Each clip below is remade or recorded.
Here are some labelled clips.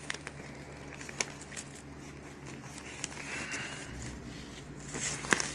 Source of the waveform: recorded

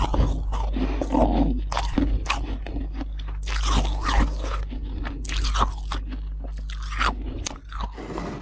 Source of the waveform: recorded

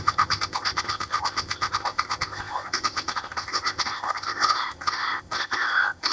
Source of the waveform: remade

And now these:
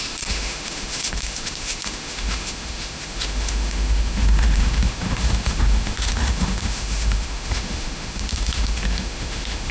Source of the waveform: remade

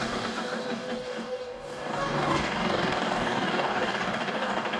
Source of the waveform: remade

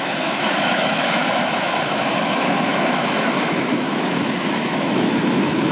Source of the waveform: remade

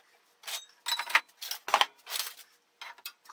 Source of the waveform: recorded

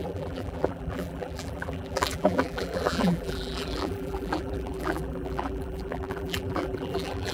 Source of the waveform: remade